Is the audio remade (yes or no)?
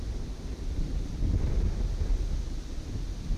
no